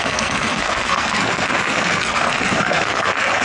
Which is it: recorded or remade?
remade